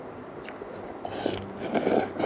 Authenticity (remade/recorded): recorded